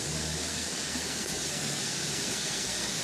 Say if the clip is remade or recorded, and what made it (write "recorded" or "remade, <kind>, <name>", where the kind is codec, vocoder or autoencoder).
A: remade, codec, SNAC